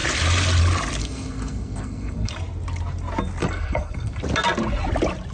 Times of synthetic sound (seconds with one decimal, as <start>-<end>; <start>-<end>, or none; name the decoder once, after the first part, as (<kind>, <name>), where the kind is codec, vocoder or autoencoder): 1.0-2.3 (codec, SNAC); 3.4-4.1